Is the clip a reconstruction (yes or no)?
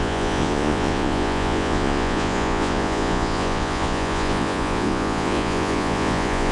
yes